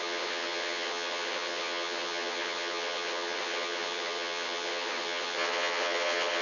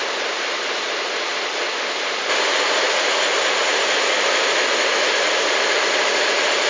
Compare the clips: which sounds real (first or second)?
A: second